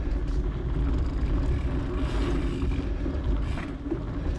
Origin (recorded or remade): recorded